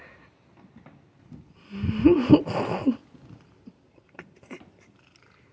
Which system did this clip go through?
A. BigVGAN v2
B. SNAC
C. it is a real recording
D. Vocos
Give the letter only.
C